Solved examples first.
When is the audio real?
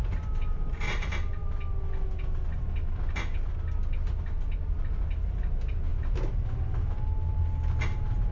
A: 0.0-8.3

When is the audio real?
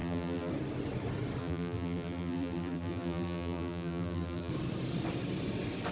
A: 0.5-1.4; 4.5-5.9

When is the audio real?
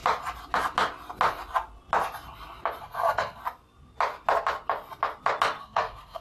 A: 0.0-2.8; 3.4-5.6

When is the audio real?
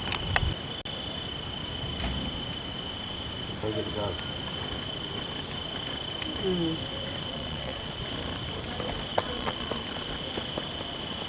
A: 0.0-7.3; 8.0-9.1; 9.7-11.3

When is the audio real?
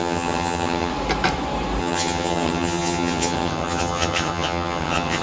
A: 0.9-1.8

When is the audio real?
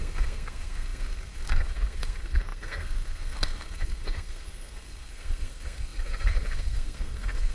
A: none